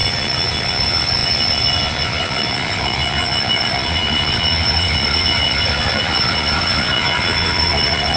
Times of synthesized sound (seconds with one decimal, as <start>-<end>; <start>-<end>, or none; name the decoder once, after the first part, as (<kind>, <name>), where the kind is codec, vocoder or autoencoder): 0.0-8.2 (vocoder, Vocos)